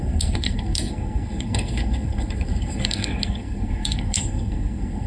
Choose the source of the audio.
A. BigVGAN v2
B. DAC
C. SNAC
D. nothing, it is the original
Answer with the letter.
C